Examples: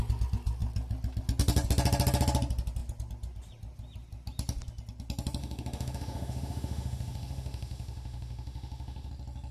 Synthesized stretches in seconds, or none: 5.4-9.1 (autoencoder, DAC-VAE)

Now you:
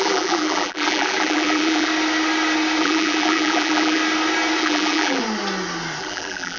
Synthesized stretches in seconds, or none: 0.0-1.9 (vocoder, BigVGAN v2); 2.8-4.0; 4.6-5.2; 6.0-6.6

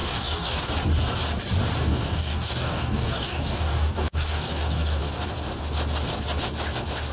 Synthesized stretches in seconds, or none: 0.0-0.7 (codec, DAC); 1.8-5.0